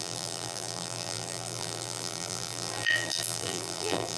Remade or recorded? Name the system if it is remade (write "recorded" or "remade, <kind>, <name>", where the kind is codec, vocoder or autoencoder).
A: remade, vocoder, BigVGAN v2